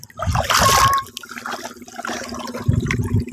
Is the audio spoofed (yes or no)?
no